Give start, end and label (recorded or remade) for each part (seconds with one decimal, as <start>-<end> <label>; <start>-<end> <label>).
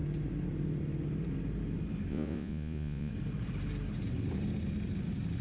0.0-2.1 recorded; 2.1-3.1 remade; 3.1-5.4 recorded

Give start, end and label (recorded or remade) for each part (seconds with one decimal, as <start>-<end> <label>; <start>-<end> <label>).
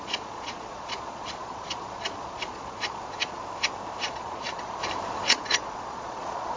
0.0-3.4 remade; 3.4-4.0 recorded; 4.0-4.8 remade; 4.8-5.3 recorded; 5.3-6.6 remade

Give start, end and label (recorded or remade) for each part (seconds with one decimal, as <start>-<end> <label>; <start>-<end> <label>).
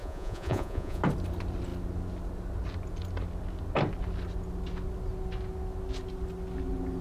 0.0-1.0 remade; 1.0-7.0 recorded